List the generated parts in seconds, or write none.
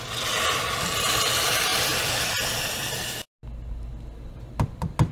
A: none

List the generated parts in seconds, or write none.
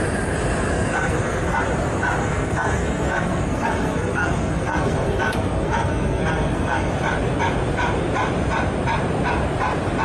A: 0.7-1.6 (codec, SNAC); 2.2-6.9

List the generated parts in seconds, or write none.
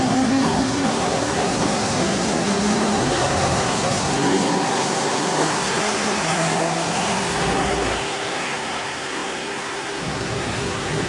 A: 0.0-11.1 (codec, SNAC)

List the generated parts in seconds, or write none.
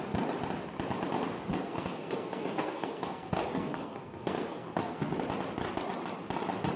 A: 1.5-5.1 (codec, SNAC)